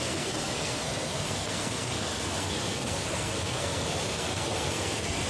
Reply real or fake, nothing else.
fake